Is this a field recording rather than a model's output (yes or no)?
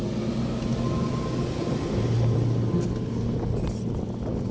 yes